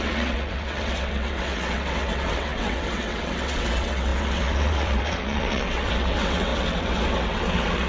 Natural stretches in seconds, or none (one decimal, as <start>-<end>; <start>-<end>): none